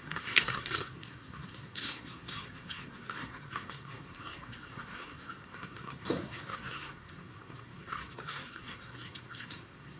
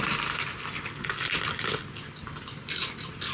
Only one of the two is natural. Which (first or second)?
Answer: second